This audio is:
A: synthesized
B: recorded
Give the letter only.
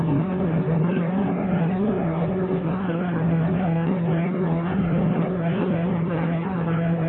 A